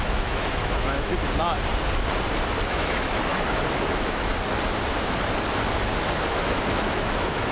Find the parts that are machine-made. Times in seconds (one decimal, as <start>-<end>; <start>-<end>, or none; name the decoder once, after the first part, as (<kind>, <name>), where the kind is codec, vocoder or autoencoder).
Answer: 0.0-1.1 (autoencoder, DAC-VAE); 2.7-3.3; 3.9-4.3; 6.3-7.5